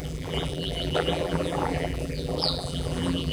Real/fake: fake